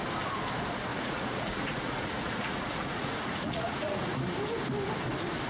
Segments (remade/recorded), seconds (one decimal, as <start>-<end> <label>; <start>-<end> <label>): 0.0-0.9 recorded; 0.9-4.2 remade; 4.2-5.5 recorded